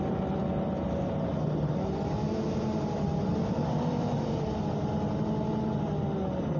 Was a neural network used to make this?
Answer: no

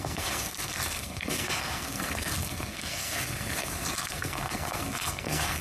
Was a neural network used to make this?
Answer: yes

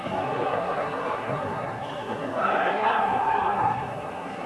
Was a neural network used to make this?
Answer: yes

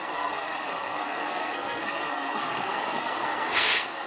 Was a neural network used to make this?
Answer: yes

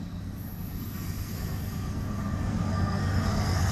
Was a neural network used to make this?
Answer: yes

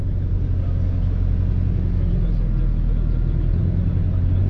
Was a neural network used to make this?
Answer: no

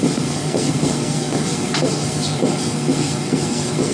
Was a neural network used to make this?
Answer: yes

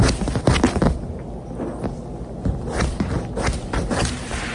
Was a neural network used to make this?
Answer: no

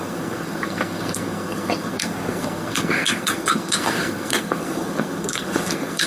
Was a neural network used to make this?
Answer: yes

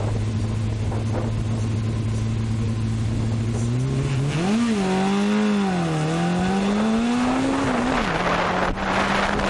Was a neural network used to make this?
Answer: no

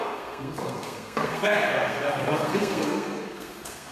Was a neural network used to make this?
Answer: yes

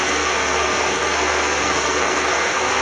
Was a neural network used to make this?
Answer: yes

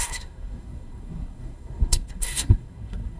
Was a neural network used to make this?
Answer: yes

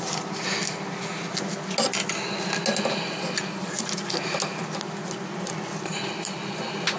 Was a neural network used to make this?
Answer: no